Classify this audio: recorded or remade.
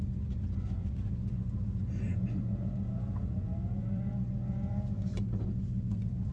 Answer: remade